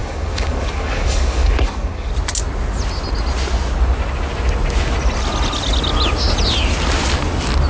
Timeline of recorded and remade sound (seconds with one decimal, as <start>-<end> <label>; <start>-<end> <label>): 0.0-2.1 remade; 2.1-7.7 recorded